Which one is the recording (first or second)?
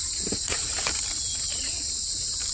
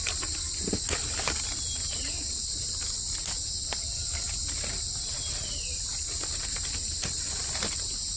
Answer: second